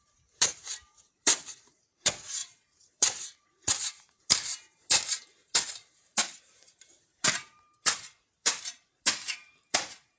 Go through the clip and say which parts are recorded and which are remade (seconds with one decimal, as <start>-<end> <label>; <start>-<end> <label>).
0.0-10.2 remade